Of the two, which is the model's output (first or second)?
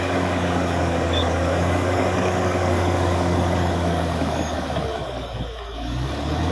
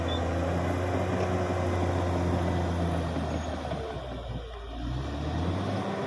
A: first